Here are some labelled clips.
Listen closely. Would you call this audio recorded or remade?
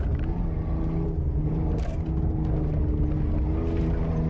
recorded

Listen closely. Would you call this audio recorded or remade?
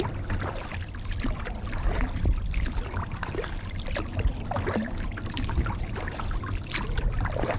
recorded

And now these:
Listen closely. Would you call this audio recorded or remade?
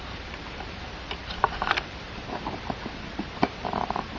remade